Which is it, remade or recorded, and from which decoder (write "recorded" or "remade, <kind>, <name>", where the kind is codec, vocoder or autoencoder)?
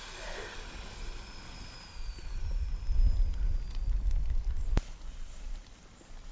recorded